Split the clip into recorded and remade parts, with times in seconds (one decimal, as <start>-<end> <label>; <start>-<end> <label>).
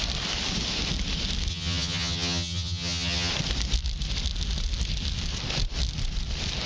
0.0-1.5 recorded; 1.5-3.3 remade; 3.3-6.7 recorded